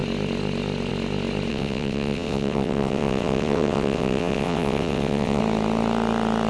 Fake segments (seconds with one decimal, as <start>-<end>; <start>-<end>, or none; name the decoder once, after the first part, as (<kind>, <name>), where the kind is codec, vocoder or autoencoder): 1.5-5.4 (vocoder, WaveNeXt)